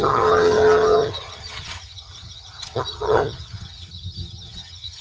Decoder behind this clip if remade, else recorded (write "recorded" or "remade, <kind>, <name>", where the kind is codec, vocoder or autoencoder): remade, vocoder, HiFi-GAN